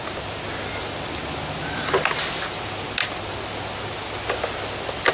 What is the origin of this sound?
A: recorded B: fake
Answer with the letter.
A